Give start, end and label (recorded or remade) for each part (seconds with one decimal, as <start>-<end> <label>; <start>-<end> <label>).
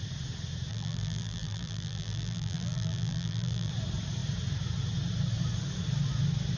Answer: 0.0-0.7 recorded; 0.7-3.7 remade; 3.7-6.6 recorded